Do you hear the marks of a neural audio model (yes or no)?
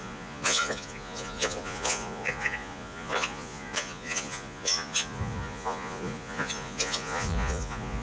yes